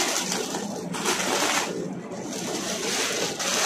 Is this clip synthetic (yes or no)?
no